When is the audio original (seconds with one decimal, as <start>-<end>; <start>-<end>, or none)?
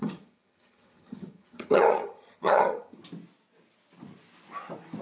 3.0-5.0